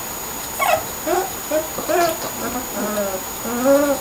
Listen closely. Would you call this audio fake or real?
real